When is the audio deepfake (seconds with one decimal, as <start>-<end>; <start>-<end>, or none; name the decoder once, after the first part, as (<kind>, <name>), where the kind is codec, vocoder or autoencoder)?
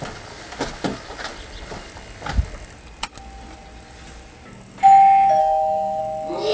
5.4-6.0 (codec, SNAC)